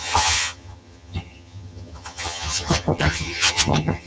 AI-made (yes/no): yes